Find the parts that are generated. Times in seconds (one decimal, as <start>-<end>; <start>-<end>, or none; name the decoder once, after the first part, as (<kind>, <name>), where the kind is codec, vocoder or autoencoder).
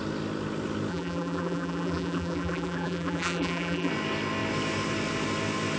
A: 0.9-3.9 (vocoder, BigVGAN v2)